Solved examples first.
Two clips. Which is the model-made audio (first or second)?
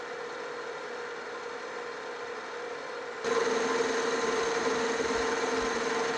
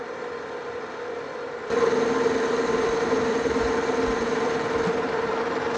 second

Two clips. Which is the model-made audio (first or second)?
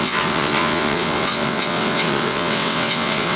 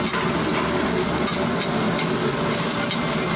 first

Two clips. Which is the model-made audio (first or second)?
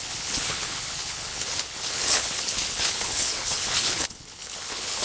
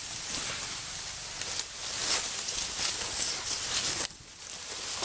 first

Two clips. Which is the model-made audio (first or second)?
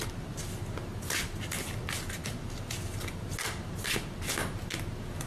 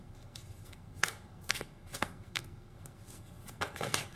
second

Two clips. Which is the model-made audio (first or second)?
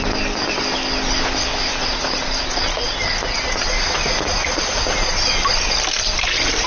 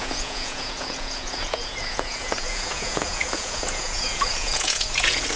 second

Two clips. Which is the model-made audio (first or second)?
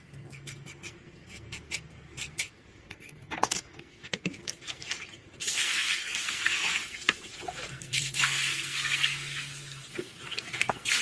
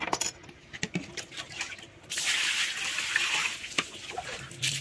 first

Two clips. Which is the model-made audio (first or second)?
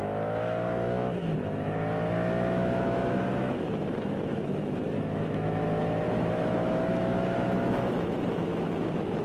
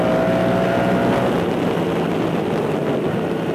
first